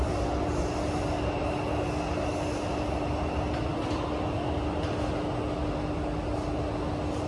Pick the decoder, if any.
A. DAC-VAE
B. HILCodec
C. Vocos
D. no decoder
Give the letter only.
D